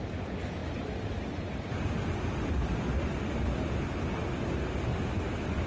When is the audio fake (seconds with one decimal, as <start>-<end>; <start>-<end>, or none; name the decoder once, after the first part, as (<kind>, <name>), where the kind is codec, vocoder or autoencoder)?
none